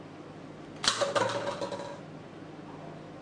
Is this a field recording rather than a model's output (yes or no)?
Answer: yes